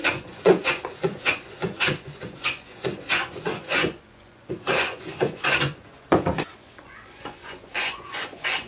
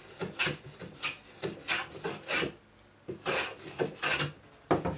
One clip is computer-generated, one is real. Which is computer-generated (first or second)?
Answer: first